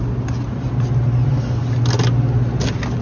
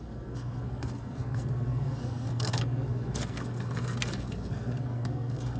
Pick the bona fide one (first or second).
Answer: first